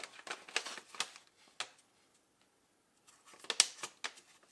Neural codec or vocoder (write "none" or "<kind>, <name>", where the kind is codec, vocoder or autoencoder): none